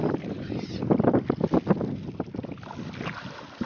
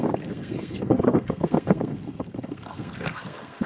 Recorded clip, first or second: first